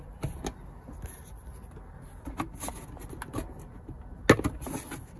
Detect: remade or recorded recorded